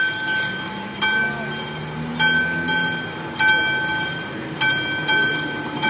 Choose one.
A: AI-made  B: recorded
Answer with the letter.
B